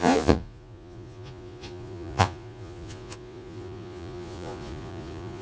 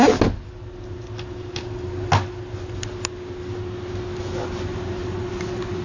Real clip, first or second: second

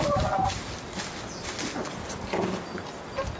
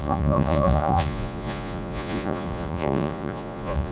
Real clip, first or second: first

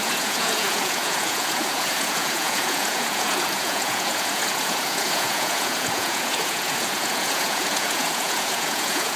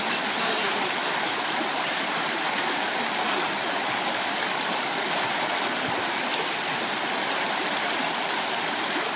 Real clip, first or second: second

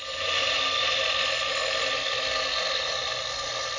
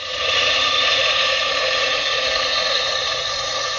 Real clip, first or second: first